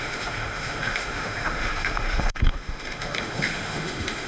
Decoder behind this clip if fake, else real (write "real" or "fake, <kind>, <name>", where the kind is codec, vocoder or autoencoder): fake, autoencoder, DAC-VAE